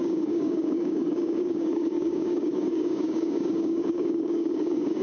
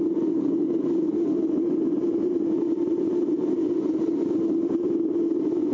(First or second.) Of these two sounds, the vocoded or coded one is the first